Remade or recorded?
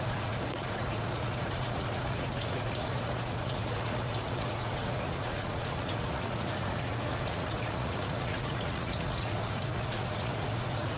remade